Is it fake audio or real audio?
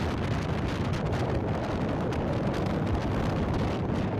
real